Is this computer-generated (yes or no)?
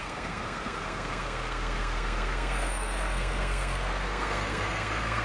yes